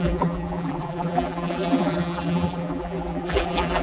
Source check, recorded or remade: remade